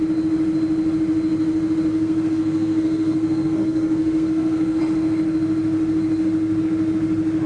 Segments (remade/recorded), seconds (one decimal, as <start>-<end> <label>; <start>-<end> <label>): 0.0-1.9 recorded; 1.9-4.8 remade; 4.8-7.5 recorded